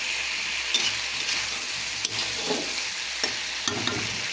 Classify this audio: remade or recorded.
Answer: recorded